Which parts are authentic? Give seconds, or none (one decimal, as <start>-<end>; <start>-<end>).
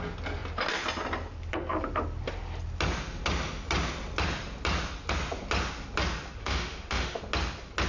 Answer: 0.0-6.4; 7.2-7.9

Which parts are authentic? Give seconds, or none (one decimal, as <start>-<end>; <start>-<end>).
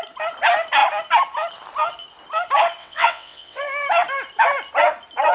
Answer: 0.0-2.8; 3.6-5.3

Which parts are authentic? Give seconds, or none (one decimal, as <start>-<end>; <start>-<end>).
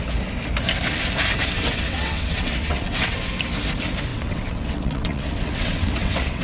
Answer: 0.0-1.4; 3.3-4.1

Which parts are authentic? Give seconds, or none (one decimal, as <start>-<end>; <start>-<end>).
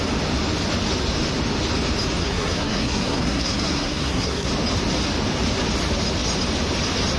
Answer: 0.0-2.2; 4.5-7.2